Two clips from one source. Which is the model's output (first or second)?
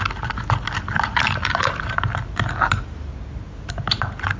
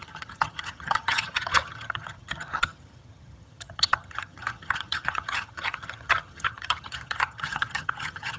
second